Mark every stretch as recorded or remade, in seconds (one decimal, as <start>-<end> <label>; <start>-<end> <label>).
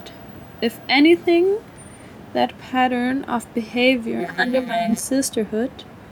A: 0.0-4.2 recorded; 4.2-5.0 remade; 5.0-6.1 recorded